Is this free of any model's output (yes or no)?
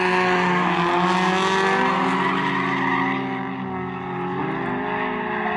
yes